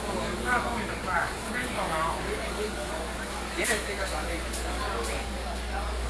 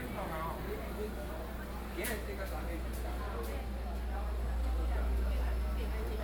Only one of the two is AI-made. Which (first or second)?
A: first